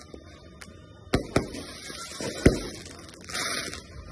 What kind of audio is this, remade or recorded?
recorded